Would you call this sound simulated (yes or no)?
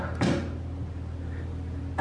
no